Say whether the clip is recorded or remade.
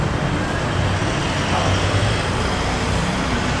recorded